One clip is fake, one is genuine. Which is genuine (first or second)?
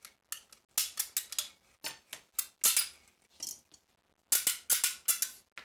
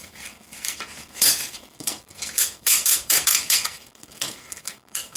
first